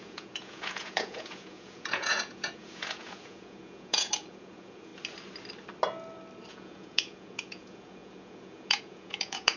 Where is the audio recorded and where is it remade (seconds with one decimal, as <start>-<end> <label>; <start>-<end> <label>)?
0.0-4.9 remade; 4.9-6.5 recorded; 6.5-9.6 remade